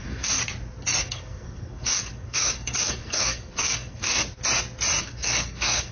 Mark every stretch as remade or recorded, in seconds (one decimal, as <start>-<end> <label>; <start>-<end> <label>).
0.0-0.4 remade; 0.4-1.0 recorded; 1.0-4.2 remade; 4.2-5.0 recorded; 5.0-5.9 remade